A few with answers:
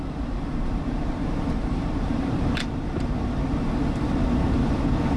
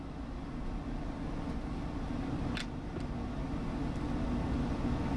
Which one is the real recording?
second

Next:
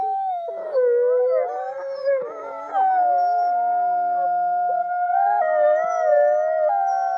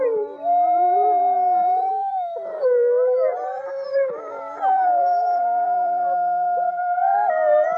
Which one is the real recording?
first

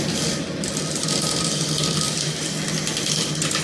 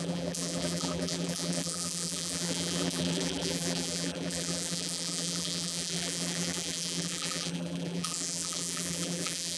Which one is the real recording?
first